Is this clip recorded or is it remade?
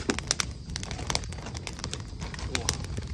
recorded